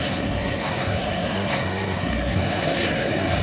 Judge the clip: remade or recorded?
remade